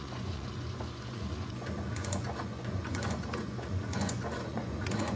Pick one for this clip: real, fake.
fake